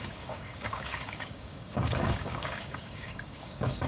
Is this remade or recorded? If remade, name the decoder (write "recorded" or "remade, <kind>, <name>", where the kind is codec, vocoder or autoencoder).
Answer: remade, codec, DAC